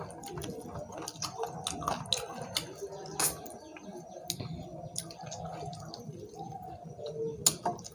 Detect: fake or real real